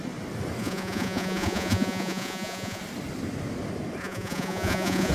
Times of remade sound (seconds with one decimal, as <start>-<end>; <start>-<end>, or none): 0.6-2.8; 4.0-5.1